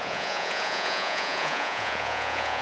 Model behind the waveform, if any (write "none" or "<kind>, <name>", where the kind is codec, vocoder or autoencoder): vocoder, Vocos